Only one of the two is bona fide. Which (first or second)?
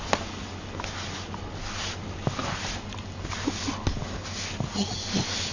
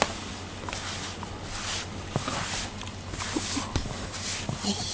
first